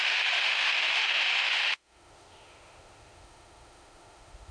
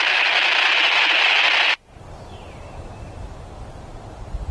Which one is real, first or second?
second